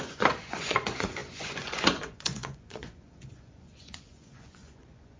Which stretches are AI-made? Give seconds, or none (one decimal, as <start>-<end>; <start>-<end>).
0.0-5.2